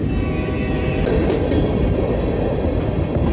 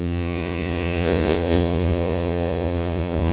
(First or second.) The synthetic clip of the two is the second